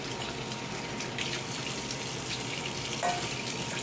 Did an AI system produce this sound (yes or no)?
no